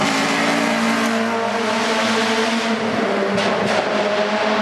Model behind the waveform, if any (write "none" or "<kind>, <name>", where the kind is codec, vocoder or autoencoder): none